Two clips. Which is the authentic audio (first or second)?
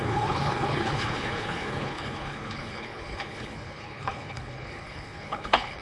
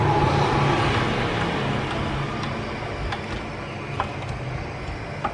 second